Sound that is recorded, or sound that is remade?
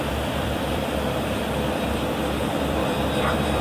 remade